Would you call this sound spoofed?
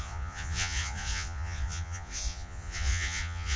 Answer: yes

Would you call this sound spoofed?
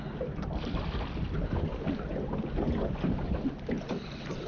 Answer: no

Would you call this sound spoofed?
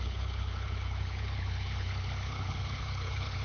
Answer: yes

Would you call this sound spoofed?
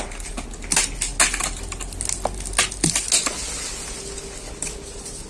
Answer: no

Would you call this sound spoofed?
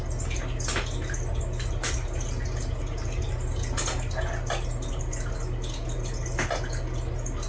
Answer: no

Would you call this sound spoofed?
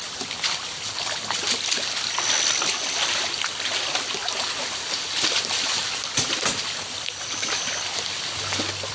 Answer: no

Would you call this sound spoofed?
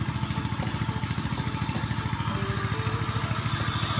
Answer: no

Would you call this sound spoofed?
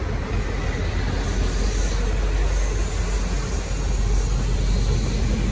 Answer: no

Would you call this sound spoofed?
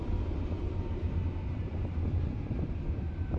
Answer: yes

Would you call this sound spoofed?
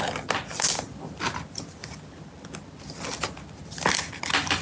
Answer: no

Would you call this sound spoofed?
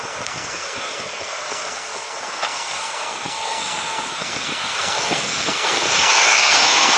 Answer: yes